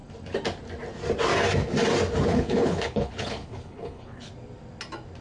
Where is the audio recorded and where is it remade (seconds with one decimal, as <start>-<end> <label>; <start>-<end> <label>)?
0.0-2.3 recorded; 2.3-4.3 remade; 4.3-5.2 recorded